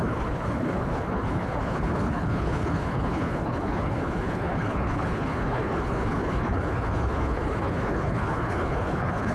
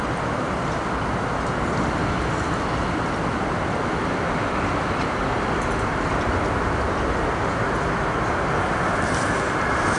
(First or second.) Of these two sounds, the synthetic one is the first